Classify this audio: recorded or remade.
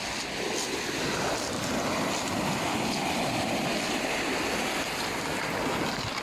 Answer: recorded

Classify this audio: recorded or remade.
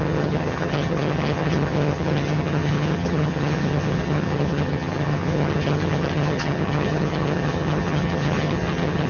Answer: remade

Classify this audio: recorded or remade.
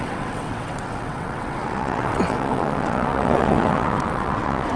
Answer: remade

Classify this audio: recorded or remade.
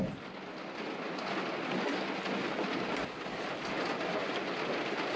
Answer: recorded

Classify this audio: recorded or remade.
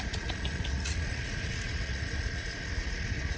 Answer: remade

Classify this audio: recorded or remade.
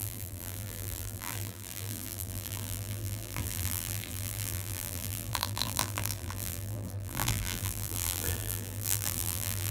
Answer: remade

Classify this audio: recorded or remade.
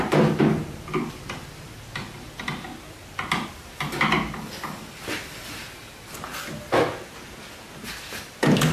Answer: recorded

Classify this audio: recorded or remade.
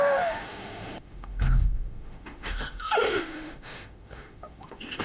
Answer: remade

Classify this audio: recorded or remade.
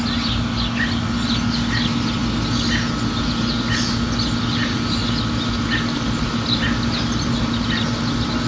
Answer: recorded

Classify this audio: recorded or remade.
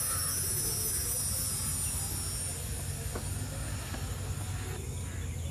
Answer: recorded